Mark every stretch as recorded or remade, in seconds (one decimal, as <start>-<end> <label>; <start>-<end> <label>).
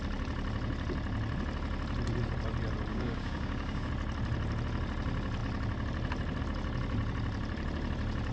0.0-2.9 recorded; 2.9-3.9 remade; 3.9-8.3 recorded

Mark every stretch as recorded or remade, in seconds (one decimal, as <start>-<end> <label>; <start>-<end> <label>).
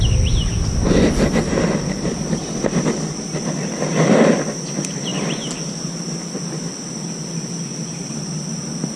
0.0-9.0 recorded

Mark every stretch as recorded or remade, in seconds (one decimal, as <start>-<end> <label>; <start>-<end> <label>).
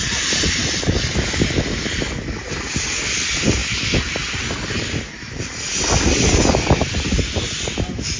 0.0-8.2 recorded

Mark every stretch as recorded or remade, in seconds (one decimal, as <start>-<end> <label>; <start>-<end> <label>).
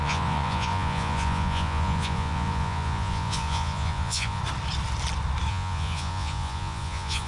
0.0-4.4 remade; 4.4-5.5 recorded; 5.5-7.3 remade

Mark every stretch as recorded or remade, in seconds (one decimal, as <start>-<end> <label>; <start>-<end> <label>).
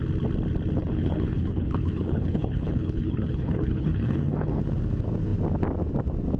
0.0-0.8 recorded; 0.8-4.6 remade; 4.6-6.4 recorded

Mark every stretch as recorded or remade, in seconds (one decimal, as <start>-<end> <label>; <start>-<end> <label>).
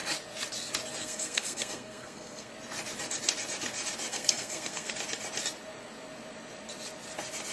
0.0-1.0 recorded; 1.0-2.5 remade; 2.5-4.1 recorded; 4.1-4.9 remade; 4.9-7.5 recorded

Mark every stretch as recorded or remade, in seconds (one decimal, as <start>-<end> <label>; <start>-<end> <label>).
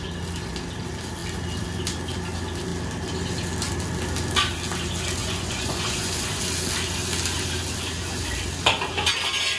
0.0-5.2 recorded; 5.2-6.4 remade; 6.4-9.6 recorded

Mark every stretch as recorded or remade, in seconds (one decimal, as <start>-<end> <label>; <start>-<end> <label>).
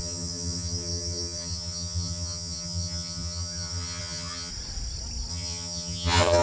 0.0-4.5 remade; 4.5-5.3 recorded; 5.3-6.4 remade